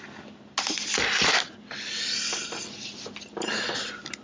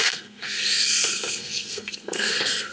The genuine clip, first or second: first